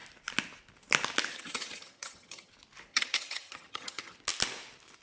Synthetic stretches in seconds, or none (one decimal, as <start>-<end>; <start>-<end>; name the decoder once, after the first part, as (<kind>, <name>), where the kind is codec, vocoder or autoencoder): 1.3-2.5 (vocoder, HiFi-GAN); 2.9-4.2